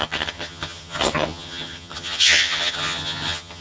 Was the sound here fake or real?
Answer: fake